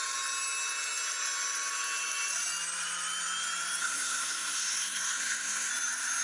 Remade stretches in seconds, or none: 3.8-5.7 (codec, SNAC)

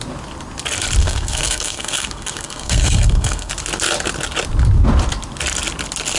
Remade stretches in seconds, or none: 1.0-3.5 (codec, SNAC)

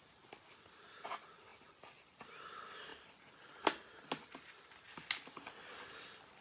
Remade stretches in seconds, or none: none

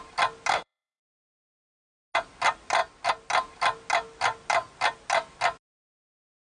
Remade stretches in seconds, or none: 0.5-1.0 (codec, SNAC)

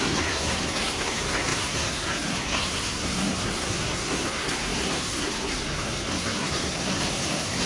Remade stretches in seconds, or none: 0.0-7.7 (codec, SNAC)

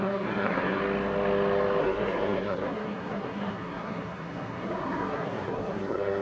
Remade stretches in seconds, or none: 0.0-0.8 (codec, SNAC); 1.8-6.2

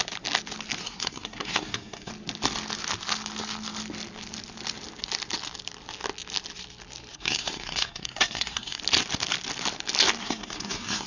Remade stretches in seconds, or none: 0.8-2.1 (codec, SNAC); 7.1-8.8; 10.2-11.1

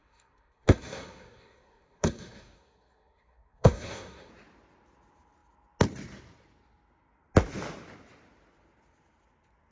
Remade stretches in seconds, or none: 0.0-4.3 (codec, SNAC)